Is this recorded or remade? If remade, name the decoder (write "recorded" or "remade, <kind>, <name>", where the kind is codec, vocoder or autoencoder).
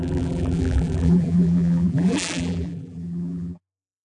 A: remade, vocoder, BigVGAN v2